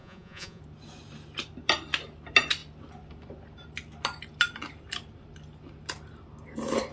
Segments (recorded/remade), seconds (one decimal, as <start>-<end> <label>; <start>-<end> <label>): 0.0-0.6 remade; 0.6-6.9 recorded